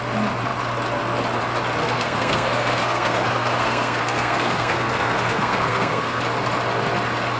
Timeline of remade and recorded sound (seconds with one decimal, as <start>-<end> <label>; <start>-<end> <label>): 0.0-1.8 recorded; 1.8-6.2 remade; 6.2-7.4 recorded